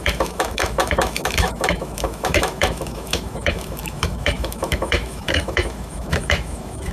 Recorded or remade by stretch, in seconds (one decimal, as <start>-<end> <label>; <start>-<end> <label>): 0.0-6.9 remade